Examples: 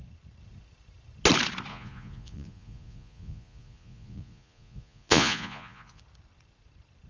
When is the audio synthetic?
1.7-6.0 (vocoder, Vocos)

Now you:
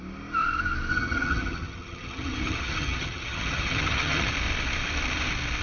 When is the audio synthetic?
0.9-4.3 (vocoder, HiFi-GAN)

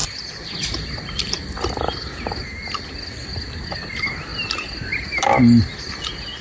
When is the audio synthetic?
none

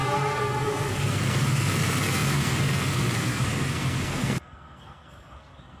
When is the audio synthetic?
0.0-5.8 (codec, SNAC)

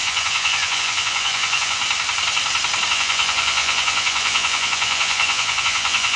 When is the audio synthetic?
0.0-1.8 (vocoder, Vocos); 2.9-6.2

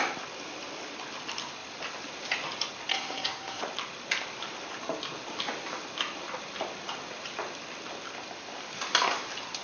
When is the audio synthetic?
2.9-3.6 (codec, SNAC)

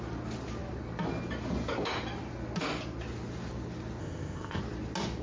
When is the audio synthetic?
4.0-4.6 (codec, ZipCodec)